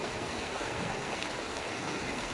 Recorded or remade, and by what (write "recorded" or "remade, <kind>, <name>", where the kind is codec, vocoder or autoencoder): remade, codec, SNAC